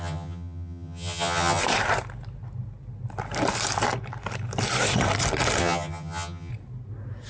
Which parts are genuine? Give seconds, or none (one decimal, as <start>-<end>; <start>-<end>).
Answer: 1.6-5.6; 6.5-7.3